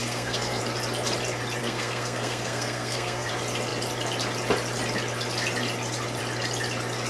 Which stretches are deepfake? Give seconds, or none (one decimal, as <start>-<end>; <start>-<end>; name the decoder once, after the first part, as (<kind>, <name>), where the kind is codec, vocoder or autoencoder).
0.0-0.6 (codec, SNAC); 1.6-3.3